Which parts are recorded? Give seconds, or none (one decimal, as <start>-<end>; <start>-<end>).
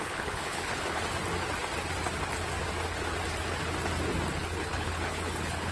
1.0-4.4